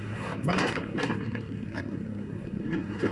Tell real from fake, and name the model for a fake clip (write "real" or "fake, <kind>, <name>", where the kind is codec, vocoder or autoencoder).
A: fake, codec, SNAC